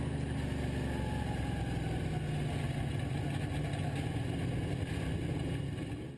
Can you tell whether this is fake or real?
real